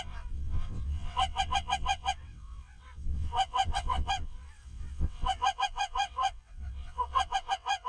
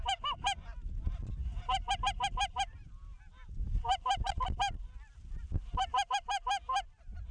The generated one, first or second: first